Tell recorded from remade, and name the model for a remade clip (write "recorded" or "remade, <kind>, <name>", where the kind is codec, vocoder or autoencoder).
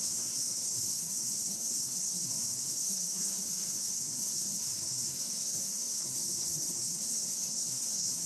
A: remade, codec, SNAC